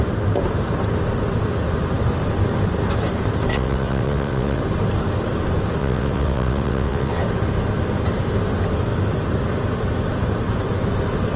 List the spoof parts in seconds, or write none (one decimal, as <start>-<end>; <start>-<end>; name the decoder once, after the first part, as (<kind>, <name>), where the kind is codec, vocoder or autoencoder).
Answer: 3.5-4.6 (vocoder, WaveNeXt); 5.8-7.2